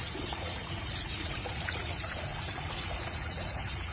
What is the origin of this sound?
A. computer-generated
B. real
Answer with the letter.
A